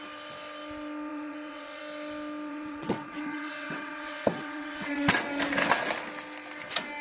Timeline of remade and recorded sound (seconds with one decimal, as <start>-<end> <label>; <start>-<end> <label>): 0.0-1.1 recorded; 1.1-1.8 remade; 1.8-2.5 recorded; 2.5-5.3 remade; 5.3-7.0 recorded